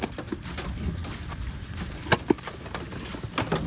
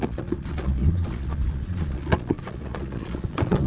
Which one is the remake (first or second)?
second